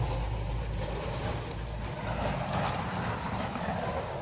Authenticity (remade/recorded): recorded